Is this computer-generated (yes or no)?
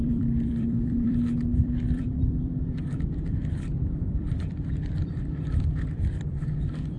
yes